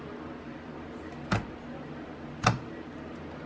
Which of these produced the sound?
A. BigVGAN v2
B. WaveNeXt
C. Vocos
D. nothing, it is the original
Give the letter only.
D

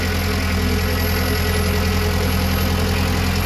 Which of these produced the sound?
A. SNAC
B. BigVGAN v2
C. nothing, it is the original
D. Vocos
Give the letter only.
C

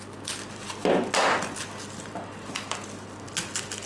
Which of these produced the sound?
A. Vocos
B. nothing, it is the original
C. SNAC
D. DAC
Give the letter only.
B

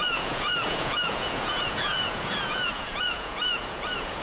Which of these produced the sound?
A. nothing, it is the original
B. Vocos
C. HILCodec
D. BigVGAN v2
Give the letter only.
B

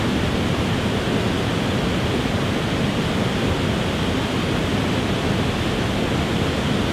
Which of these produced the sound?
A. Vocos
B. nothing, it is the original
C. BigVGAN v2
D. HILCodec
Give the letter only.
B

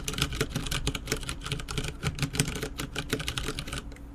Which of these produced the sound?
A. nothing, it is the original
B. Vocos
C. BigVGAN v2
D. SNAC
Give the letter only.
A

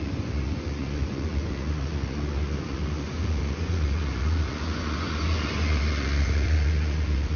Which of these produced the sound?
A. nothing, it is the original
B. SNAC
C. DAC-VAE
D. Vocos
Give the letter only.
D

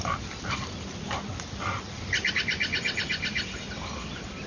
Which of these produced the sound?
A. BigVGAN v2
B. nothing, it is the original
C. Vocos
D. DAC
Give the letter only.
B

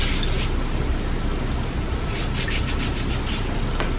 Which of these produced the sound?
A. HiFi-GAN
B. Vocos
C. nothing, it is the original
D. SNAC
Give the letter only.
C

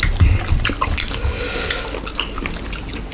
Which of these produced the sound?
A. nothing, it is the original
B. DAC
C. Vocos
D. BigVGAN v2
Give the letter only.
A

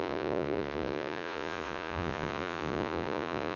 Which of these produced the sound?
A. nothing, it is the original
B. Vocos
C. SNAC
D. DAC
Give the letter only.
B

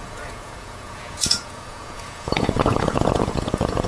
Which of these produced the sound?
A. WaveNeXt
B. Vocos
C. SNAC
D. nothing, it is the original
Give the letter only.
B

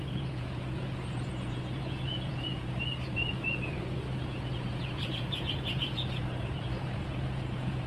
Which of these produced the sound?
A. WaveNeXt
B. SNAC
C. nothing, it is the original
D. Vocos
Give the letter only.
D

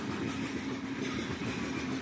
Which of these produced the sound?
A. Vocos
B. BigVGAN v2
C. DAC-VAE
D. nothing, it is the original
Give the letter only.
D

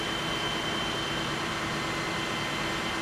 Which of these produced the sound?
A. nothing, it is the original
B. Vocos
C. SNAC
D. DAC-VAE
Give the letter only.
A